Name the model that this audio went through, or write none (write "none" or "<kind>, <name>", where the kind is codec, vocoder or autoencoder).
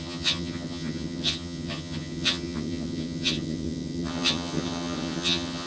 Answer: vocoder, HiFi-GAN